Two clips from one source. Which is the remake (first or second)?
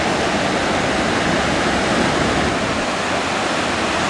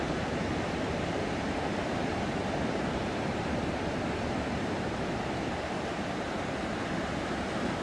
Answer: second